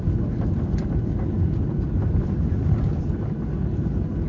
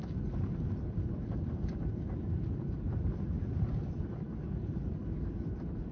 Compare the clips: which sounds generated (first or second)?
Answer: second